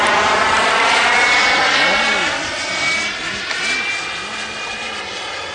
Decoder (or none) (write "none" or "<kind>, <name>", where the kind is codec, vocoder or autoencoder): none